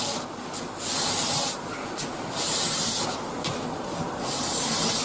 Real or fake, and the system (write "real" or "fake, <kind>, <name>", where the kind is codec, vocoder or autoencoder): real